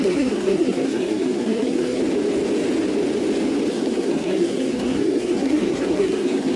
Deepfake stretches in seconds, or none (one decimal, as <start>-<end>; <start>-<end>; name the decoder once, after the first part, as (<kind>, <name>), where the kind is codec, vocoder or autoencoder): 0.0-2.0 (codec, SNAC); 3.7-6.6